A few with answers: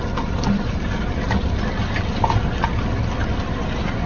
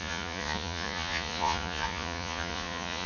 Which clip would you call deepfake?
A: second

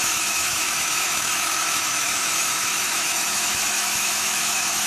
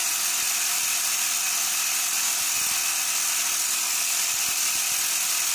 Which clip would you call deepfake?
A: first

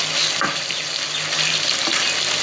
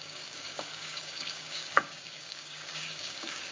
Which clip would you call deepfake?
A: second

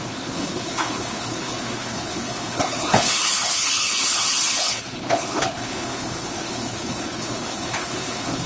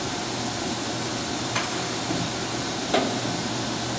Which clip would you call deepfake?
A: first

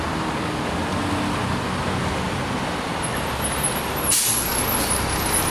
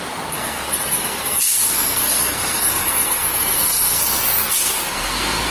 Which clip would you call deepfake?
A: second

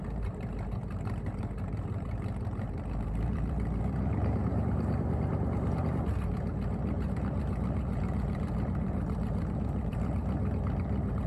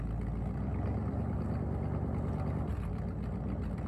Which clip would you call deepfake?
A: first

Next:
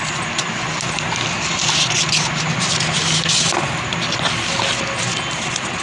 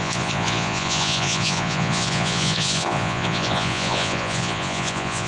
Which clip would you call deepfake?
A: second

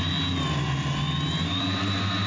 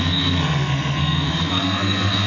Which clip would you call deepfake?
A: second